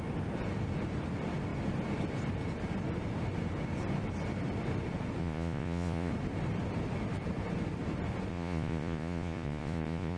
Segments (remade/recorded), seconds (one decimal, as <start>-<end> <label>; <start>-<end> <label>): 0.0-5.2 recorded; 5.2-6.1 remade; 6.1-8.3 recorded; 8.3-10.2 remade